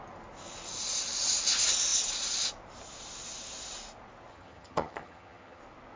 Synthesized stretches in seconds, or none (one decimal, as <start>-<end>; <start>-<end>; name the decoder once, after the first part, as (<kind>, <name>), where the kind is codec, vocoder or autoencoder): 4.3-5.6 (vocoder, HiFi-GAN)